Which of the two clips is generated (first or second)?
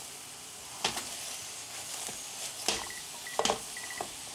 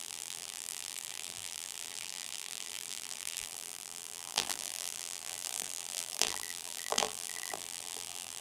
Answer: second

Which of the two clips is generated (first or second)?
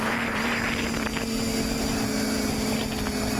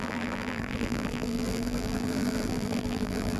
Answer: second